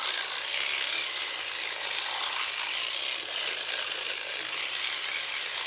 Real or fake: real